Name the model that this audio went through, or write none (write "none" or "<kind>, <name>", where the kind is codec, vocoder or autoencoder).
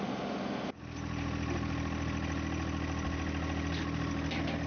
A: none